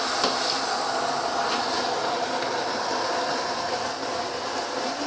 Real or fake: real